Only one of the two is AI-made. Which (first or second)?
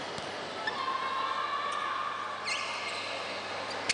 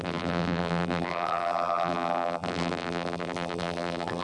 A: second